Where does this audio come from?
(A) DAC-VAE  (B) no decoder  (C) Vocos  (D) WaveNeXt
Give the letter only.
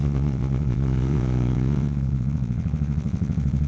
C